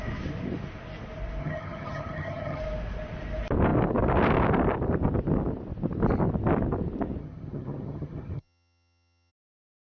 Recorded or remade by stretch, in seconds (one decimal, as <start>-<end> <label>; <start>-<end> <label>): 0.0-1.4 recorded; 1.4-2.6 remade; 2.6-7.2 recorded; 7.2-9.3 remade; 9.3-9.8 recorded